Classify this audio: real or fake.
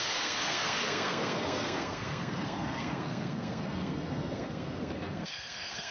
fake